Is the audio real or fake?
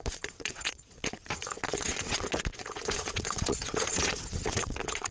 fake